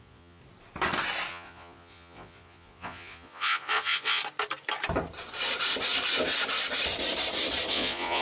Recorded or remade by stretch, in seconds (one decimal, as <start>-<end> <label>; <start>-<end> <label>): 0.0-0.4 remade; 0.4-1.3 recorded; 1.3-4.2 remade; 4.2-7.7 recorded; 7.7-8.2 remade